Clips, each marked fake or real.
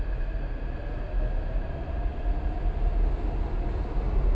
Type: real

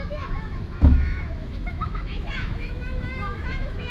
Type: fake